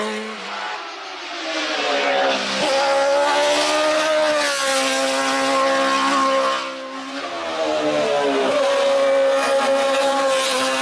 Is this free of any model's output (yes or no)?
yes